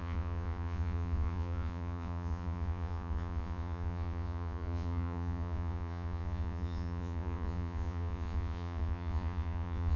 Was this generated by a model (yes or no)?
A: yes